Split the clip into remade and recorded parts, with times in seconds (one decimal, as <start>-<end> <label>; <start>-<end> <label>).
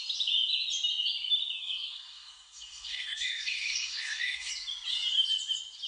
0.0-1.6 recorded; 1.6-4.5 remade; 4.5-5.9 recorded